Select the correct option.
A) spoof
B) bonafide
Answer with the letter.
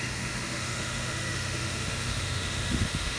A